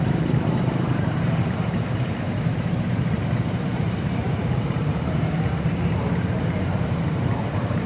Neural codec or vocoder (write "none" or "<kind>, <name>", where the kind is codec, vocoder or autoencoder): vocoder, BigVGAN v2